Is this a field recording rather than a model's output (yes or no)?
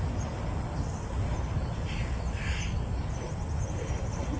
yes